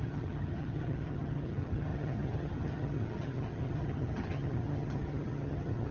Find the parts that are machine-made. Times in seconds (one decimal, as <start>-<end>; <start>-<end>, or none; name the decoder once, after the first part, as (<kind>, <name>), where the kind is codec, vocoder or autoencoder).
0.0-5.9 (vocoder, HiFi-GAN)